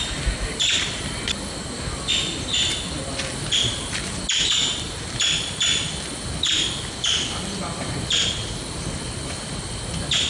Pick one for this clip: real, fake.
real